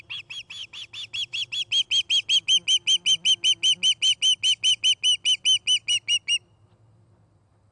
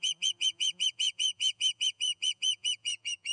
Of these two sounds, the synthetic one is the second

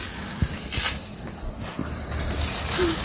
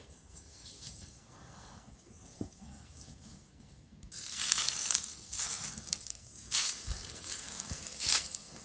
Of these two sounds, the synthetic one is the second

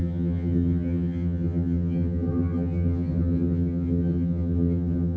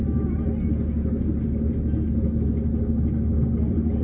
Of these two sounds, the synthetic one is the first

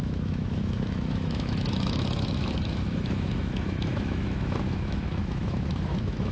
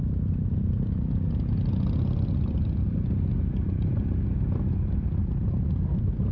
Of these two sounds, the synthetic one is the first